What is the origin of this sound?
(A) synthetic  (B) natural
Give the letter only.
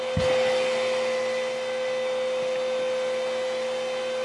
B